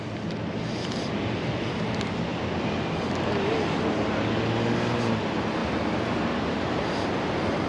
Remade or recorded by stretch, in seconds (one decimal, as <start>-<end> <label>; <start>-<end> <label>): 0.0-7.7 recorded